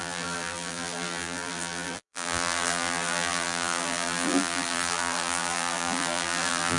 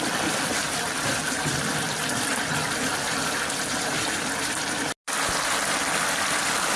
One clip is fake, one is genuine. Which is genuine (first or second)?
second